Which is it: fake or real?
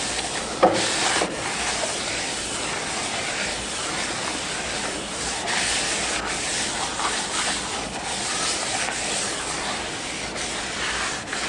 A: real